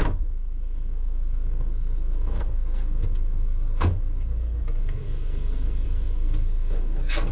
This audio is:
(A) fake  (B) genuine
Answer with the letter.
A